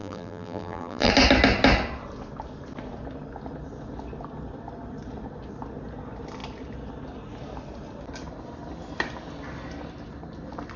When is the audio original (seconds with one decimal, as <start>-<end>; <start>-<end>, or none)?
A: 1.1-10.8